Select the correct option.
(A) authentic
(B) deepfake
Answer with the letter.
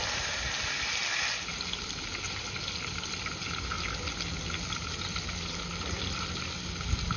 A